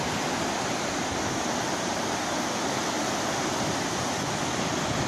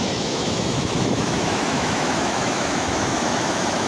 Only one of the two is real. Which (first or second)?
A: first